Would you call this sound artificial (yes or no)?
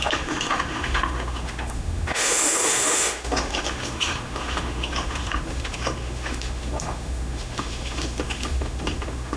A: yes